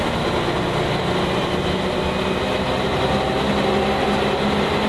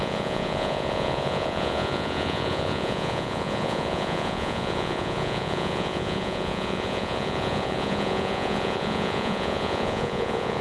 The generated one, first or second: second